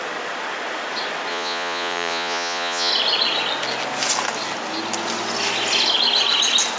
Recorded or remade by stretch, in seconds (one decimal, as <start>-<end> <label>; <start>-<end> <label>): 0.0-1.3 recorded; 1.3-2.9 remade; 2.9-6.8 recorded